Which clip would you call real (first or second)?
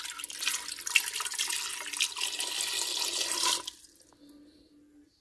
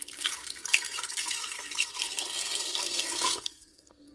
first